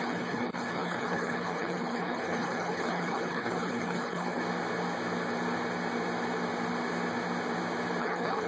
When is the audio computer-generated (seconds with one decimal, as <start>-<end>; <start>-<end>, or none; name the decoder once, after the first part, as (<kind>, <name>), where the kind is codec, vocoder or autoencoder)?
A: 0.0-4.4 (codec, HILCodec); 8.0-8.5